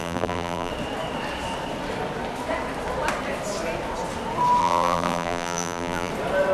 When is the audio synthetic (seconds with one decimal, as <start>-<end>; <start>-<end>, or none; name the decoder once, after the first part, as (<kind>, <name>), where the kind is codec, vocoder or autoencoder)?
0.0-0.7 (vocoder, BigVGAN v2); 4.6-6.1